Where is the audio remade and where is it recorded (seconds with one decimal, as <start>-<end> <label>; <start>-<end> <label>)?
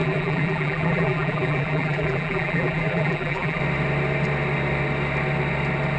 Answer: 0.0-3.6 remade; 3.6-6.0 recorded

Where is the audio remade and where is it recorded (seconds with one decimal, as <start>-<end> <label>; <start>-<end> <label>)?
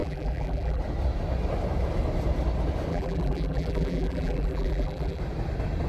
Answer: 0.0-0.8 remade; 0.8-2.9 recorded; 2.9-5.2 remade; 5.2-5.9 recorded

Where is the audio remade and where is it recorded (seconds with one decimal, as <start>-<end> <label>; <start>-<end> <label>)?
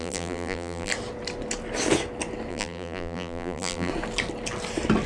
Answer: 0.0-0.9 remade; 0.9-2.5 recorded; 2.5-3.9 remade; 3.9-5.1 recorded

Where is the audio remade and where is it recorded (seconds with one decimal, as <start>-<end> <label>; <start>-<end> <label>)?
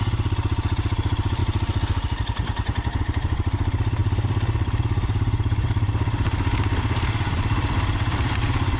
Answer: 0.0-1.4 remade; 1.4-3.0 recorded; 3.0-8.8 remade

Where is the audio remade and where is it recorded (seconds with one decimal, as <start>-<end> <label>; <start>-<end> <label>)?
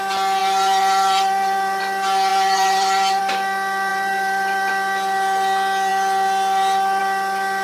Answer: 0.0-0.4 recorded; 0.4-1.8 remade; 1.8-2.3 recorded; 2.3-3.2 remade; 3.2-3.9 recorded; 3.9-4.7 remade; 4.7-7.6 recorded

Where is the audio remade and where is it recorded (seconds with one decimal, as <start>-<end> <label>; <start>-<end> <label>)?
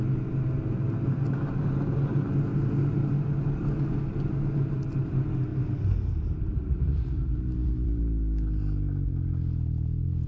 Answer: 0.0-5.5 recorded; 5.5-7.4 remade; 7.4-10.3 recorded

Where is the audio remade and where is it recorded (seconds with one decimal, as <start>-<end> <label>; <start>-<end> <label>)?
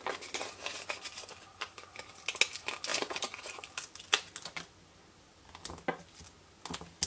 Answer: 0.0-1.5 recorded; 1.5-2.1 remade; 2.1-2.9 recorded; 2.9-3.7 remade; 3.7-7.1 recorded